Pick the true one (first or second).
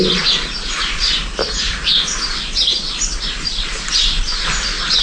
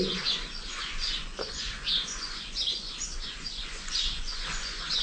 first